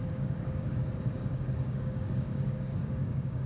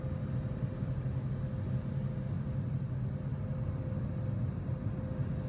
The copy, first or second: first